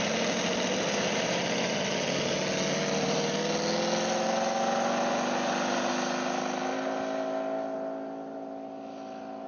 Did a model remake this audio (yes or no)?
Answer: no